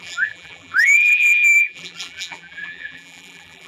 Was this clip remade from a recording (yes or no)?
yes